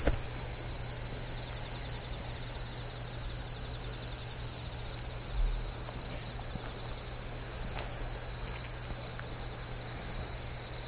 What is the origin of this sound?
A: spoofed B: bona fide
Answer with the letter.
B